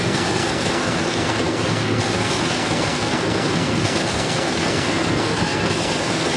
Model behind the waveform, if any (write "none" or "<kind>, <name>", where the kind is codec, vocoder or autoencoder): codec, SNAC